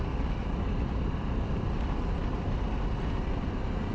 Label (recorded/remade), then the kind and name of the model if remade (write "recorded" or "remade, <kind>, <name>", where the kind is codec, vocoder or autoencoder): recorded